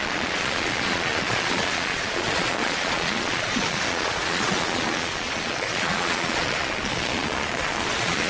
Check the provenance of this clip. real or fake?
fake